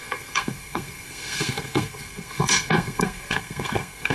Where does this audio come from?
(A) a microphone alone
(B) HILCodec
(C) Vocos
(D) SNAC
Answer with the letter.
D